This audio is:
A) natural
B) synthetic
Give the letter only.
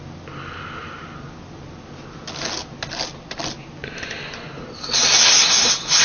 A